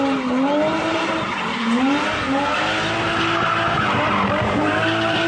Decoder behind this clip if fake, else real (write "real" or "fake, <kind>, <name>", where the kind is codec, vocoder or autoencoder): real